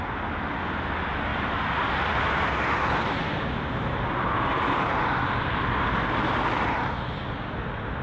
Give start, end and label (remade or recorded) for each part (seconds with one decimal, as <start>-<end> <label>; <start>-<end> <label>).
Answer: 0.0-8.0 recorded